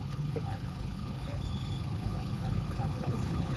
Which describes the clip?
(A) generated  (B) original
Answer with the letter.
A